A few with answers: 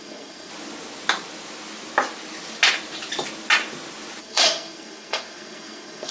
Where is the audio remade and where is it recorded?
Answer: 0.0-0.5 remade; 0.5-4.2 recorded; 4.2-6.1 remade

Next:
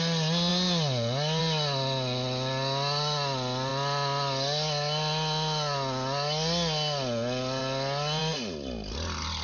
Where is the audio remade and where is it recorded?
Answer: 0.0-9.4 recorded

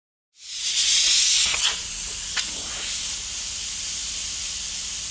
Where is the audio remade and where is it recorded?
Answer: 0.0-5.1 recorded

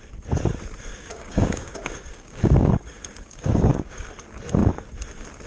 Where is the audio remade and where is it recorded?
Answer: 0.0-0.9 recorded; 0.9-4.1 remade; 4.1-5.5 recorded

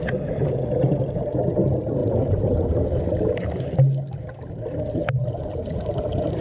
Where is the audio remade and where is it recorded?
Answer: 0.0-6.4 recorded